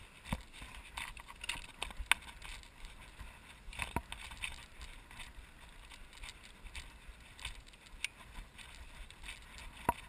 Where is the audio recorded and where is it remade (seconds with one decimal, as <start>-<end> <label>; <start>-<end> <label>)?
0.0-10.1 recorded